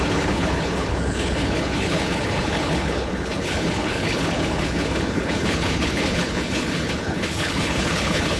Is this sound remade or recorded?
remade